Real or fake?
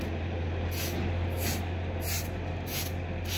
real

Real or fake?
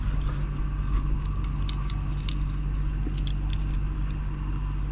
real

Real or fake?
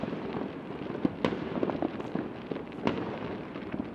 real